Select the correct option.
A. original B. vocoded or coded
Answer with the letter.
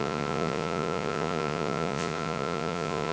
B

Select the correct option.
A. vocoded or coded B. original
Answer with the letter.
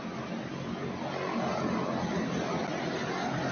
B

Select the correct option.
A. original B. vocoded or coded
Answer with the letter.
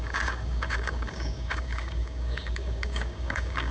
B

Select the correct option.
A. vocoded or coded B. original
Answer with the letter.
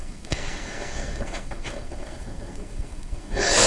A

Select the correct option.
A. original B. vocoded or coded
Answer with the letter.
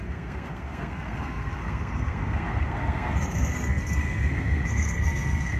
B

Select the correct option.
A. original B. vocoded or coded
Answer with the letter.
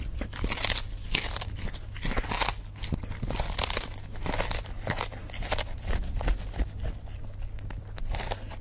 A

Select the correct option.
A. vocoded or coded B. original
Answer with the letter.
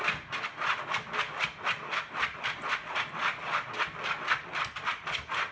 B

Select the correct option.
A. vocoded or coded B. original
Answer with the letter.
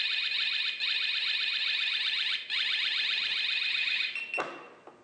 B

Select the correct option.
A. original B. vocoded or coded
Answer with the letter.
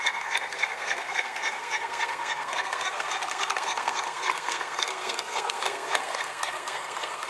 B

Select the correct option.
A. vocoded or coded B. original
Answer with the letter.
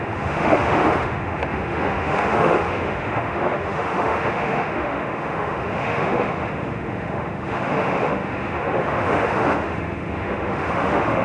A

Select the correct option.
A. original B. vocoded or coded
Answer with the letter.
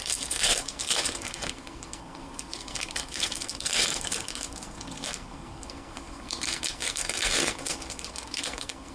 B